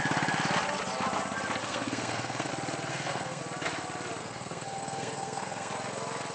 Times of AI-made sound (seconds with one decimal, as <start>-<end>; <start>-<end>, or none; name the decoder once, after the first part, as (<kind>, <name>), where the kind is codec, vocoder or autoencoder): 1.6-2.5 (codec, SNAC); 2.9-3.4; 4.2-5.7

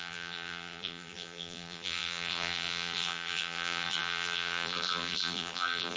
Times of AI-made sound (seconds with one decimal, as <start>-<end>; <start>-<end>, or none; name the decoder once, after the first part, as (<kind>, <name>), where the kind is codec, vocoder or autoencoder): 0.0-6.0 (vocoder, BigVGAN v2)

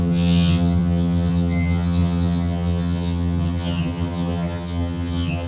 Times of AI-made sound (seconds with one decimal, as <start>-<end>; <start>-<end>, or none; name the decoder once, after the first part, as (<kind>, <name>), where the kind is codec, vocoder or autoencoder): 0.0-5.5 (vocoder, HiFi-GAN)

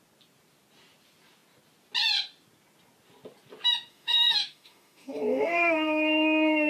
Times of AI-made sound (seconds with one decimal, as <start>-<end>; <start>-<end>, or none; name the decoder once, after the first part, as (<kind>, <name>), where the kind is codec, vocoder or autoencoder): 3.9-6.7 (autoencoder, DAC-VAE)